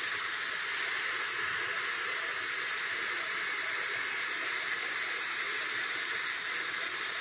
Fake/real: real